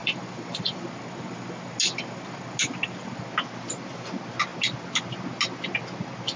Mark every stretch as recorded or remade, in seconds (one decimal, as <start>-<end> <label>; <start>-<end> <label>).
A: 0.0-0.8 remade; 0.8-6.4 recorded

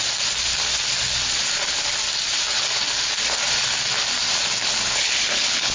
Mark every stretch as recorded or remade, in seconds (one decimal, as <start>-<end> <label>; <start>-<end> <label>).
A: 0.0-4.6 recorded; 4.6-5.7 remade